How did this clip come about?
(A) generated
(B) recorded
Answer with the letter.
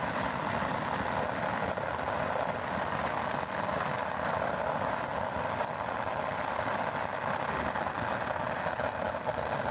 B